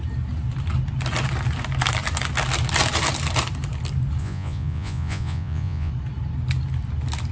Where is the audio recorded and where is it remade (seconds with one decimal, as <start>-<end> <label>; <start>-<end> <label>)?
0.0-4.2 recorded; 4.2-5.9 remade; 5.9-7.3 recorded